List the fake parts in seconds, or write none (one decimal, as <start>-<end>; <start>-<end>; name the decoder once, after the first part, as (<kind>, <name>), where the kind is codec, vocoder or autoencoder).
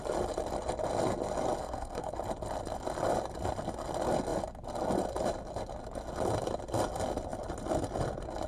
1.6-2.1 (codec, SNAC)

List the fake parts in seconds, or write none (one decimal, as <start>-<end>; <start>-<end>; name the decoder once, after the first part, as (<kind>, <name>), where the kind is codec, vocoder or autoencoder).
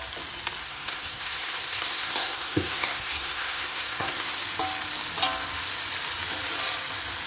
0.6-4.4 (codec, SNAC)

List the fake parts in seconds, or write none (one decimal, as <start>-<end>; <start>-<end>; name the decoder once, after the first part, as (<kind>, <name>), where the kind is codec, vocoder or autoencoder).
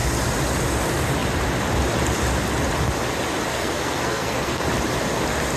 3.5-4.6 (codec, SNAC)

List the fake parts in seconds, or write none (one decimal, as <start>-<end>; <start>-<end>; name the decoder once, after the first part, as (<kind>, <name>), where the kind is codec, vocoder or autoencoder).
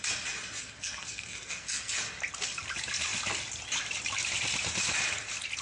0.6-2.0 (codec, SNAC)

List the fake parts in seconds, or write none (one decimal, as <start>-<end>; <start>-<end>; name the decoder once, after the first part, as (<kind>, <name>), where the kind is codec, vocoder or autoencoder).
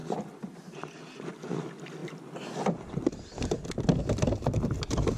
none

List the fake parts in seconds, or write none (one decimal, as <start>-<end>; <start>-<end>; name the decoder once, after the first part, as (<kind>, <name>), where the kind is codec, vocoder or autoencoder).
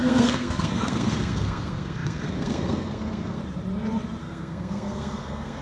0.0-3.4 (codec, SNAC); 4.2-5.6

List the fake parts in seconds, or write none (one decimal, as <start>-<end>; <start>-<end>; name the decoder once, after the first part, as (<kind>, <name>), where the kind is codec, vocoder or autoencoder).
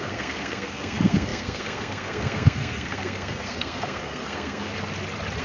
0.0-4.7 (codec, SNAC)